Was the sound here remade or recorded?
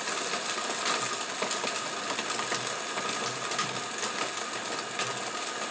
recorded